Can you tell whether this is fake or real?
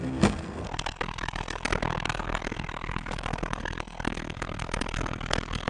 fake